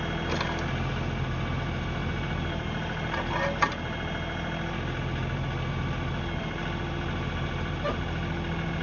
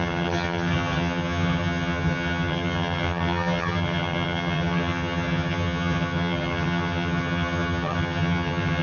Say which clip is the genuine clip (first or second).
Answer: first